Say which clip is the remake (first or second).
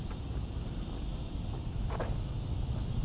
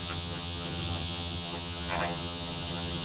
second